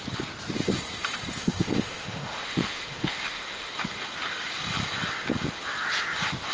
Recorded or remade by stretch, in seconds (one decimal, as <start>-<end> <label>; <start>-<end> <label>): 0.0-1.4 recorded; 1.4-3.7 remade; 3.7-6.5 recorded